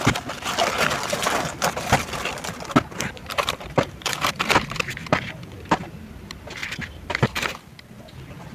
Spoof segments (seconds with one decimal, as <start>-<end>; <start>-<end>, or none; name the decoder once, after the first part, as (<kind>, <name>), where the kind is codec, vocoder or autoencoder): 3.2-4.4 (vocoder, BigVGAN v2); 5.0-5.8; 6.6-8.0

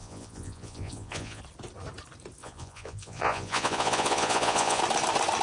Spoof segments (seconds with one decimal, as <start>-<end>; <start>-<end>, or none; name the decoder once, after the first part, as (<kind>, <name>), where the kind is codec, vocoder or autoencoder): 0.0-1.4 (vocoder, Vocos); 2.4-4.8

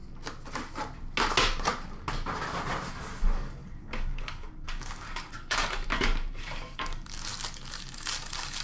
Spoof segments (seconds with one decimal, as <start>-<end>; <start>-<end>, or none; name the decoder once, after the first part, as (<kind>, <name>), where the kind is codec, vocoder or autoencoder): 2.9-7.3 (codec, DAC); 7.8-8.6